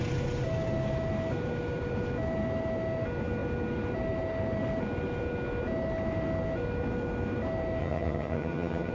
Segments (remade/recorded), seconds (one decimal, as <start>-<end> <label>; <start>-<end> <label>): 0.0-7.8 recorded; 7.8-8.9 remade